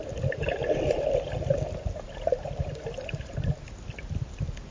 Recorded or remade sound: recorded